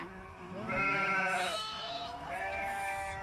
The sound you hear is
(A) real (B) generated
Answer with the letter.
B